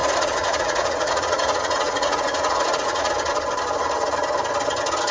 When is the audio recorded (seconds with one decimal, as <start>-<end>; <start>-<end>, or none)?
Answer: 3.1-5.1